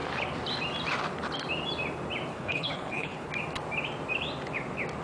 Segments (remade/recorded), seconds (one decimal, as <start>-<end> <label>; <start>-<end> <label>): 0.0-2.3 recorded; 2.3-3.3 remade; 3.3-5.0 recorded